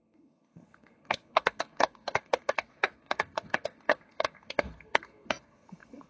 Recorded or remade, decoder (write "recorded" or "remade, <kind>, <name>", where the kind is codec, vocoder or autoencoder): remade, codec, SNAC